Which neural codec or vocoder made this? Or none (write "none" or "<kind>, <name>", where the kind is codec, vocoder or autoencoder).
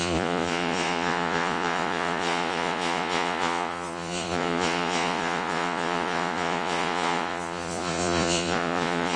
vocoder, Vocos